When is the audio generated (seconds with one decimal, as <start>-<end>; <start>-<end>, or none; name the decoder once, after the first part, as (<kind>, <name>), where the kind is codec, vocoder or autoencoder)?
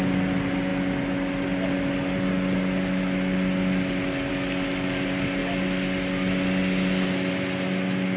none